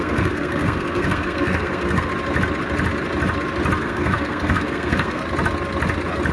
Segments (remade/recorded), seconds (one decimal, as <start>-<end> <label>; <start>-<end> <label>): 0.0-2.1 remade; 2.1-3.8 recorded; 3.8-5.2 remade; 5.2-6.3 recorded